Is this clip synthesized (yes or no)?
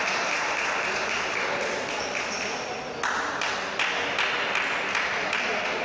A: no